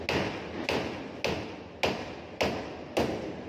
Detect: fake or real real